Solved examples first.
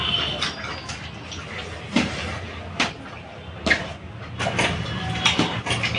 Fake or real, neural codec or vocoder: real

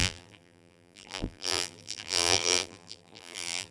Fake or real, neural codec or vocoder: fake, vocoder, BigVGAN v2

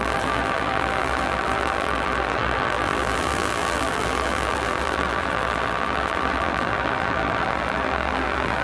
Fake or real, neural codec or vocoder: fake, vocoder, BigVGAN v2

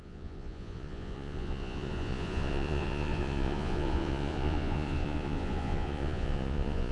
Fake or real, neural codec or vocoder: fake, vocoder, Vocos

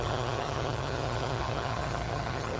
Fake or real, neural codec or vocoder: fake, vocoder, HiFi-GAN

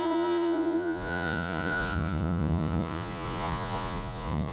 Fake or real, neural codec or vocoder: fake, vocoder, Vocos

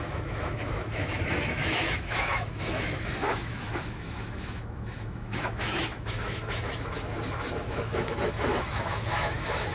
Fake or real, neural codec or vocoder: fake, autoencoder, DAC-VAE